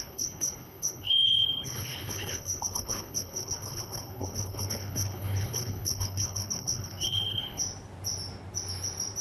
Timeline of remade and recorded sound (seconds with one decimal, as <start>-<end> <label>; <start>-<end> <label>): 0.0-7.6 remade; 7.6-9.2 recorded